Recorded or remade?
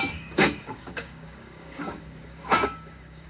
remade